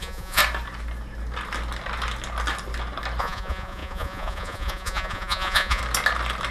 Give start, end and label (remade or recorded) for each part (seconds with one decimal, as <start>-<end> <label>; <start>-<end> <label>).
0.0-0.4 remade; 0.4-3.2 recorded; 3.2-5.8 remade; 5.8-6.5 recorded